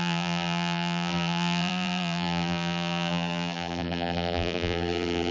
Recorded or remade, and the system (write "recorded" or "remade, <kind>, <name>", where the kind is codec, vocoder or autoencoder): remade, vocoder, BigVGAN v2